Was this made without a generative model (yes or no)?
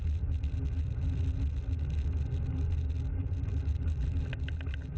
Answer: yes